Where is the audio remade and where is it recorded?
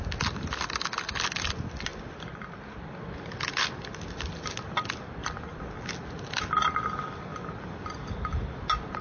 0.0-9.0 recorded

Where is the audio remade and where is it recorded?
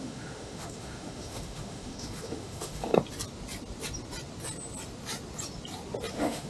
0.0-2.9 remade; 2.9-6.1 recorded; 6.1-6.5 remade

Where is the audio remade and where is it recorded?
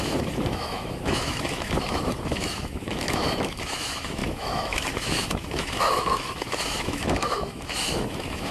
0.0-8.5 remade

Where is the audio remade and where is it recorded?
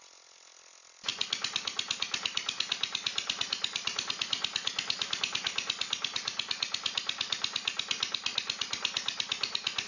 0.0-9.9 recorded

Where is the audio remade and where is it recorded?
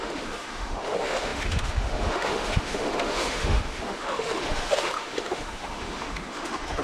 0.0-6.8 remade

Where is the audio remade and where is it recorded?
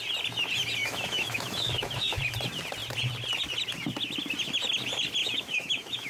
0.0-0.8 recorded; 0.8-2.2 remade; 2.2-5.2 recorded; 5.2-6.1 remade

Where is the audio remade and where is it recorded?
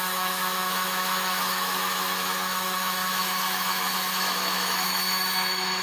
0.0-5.8 remade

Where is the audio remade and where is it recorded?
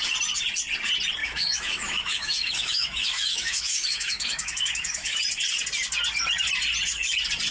0.0-1.2 recorded; 1.2-5.2 remade; 5.2-7.5 recorded